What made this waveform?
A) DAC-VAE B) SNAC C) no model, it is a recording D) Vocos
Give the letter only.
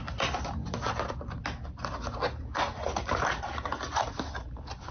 C